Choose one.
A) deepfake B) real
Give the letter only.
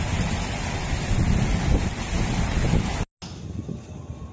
B